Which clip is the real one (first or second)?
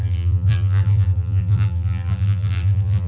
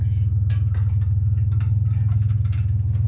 second